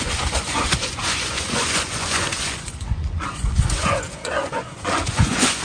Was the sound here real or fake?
fake